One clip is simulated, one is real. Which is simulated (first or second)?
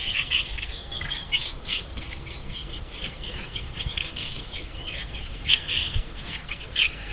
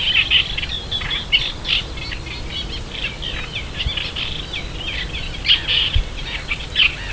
first